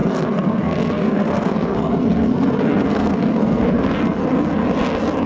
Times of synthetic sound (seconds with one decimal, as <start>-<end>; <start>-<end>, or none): 0.0-4.2